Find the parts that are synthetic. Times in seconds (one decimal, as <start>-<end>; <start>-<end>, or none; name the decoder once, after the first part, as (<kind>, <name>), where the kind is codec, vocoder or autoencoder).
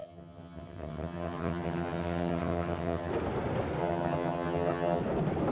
0.0-3.1 (vocoder, HiFi-GAN); 3.8-5.0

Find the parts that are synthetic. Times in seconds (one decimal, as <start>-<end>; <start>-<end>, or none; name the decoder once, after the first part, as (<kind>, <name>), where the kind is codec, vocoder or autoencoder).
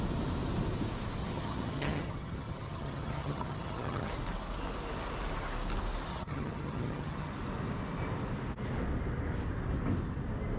1.2-4.1 (vocoder, HiFi-GAN); 6.1-7.3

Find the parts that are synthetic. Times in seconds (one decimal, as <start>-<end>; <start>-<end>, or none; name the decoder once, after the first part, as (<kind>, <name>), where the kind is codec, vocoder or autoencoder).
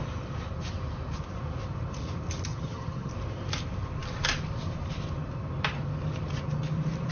2.5-3.1 (vocoder, HiFi-GAN)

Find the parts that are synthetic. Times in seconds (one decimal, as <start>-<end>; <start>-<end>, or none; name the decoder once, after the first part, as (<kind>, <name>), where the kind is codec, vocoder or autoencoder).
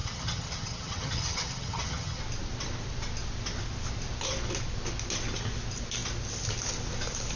0.0-2.2 (vocoder, HiFi-GAN)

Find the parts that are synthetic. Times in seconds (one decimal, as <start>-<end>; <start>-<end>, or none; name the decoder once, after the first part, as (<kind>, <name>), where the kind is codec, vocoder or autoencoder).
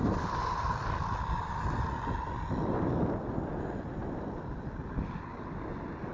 none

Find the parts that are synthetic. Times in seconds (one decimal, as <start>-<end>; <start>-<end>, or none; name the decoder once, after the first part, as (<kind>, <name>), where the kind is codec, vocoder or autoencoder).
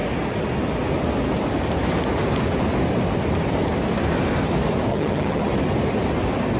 4.9-5.5 (vocoder, HiFi-GAN)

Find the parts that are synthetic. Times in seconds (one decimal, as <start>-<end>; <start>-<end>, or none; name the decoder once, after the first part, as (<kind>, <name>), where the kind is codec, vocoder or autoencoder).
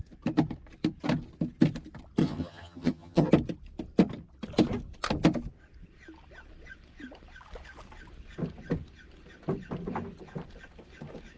2.2-3.3 (vocoder, HiFi-GAN)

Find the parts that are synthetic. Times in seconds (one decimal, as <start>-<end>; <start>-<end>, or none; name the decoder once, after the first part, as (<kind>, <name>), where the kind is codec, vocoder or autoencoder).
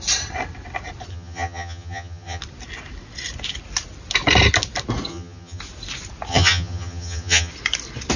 1.1-2.4 (vocoder, HiFi-GAN); 5.1-5.6; 6.3-7.5